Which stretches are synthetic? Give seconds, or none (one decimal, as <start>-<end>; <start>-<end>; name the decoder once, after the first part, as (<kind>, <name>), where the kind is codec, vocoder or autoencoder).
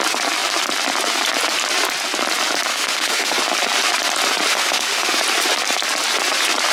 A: 2.7-3.4 (autoencoder, DAC-VAE); 4.5-5.2